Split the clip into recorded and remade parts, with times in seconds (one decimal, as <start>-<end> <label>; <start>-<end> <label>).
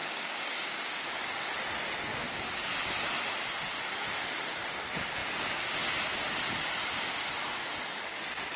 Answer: 0.0-1.5 remade; 1.5-2.1 recorded; 2.1-2.7 remade; 2.7-8.6 recorded